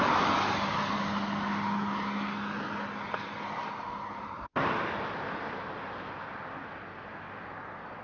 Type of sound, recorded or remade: recorded